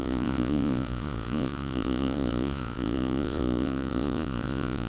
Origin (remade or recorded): remade